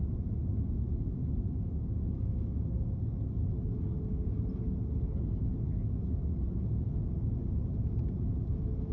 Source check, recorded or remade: recorded